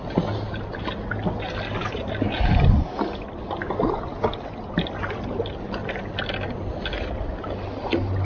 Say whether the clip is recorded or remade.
recorded